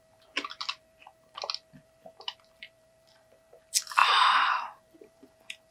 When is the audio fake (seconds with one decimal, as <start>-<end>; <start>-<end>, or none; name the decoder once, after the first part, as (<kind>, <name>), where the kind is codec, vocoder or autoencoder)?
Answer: none